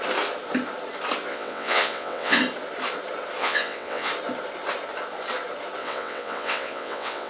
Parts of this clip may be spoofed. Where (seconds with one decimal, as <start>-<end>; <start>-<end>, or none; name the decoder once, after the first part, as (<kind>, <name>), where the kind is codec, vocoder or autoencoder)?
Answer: 1.3-2.4 (vocoder, WaveNeXt); 3.4-4.1; 5.8-7.3